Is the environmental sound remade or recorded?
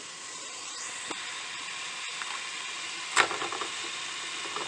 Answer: recorded